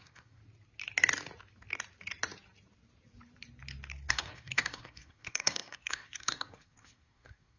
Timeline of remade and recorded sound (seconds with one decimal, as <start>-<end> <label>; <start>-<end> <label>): 0.0-0.4 remade; 0.4-4.1 recorded; 4.1-7.6 remade